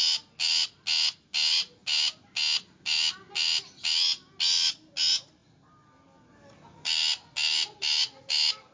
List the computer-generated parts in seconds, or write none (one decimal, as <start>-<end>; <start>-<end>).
none